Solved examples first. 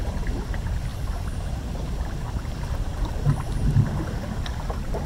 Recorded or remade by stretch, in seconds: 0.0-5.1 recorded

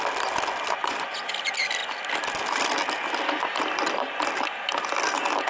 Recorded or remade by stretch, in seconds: 0.0-0.8 recorded; 0.8-1.3 remade; 1.3-5.5 recorded

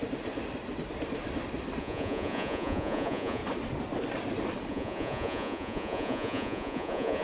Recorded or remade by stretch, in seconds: 0.0-1.8 recorded; 1.8-3.4 remade; 3.4-4.7 recorded; 4.7-7.2 remade

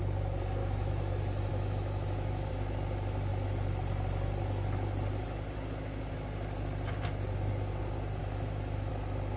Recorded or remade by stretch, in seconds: 0.0-0.6 recorded; 0.6-1.1 remade; 1.1-1.5 recorded; 1.5-2.5 remade; 2.5-8.2 recorded; 8.2-8.9 remade; 8.9-9.4 recorded

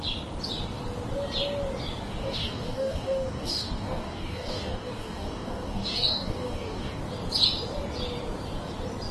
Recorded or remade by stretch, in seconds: 0.0-2.2 recorded; 2.2-7.0 remade; 7.0-9.1 recorded

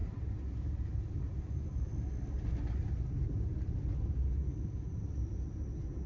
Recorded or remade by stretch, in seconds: 0.0-6.1 recorded